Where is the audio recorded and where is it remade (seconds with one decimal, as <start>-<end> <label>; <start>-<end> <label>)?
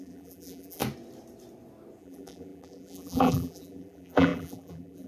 0.0-0.8 remade; 0.8-2.0 recorded; 2.0-5.1 remade